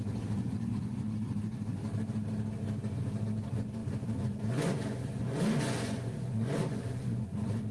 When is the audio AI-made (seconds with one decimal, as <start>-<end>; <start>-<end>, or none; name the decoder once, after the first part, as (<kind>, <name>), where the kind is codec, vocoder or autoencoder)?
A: 0.0-1.8 (vocoder, Vocos); 2.9-7.7